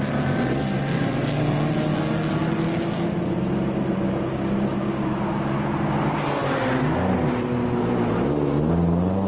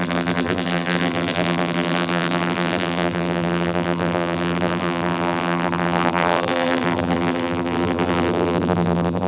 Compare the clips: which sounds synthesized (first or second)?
second